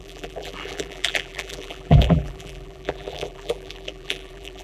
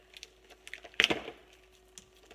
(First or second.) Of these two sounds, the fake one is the first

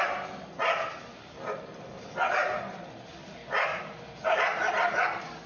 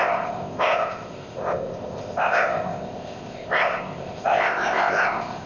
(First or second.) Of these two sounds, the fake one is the second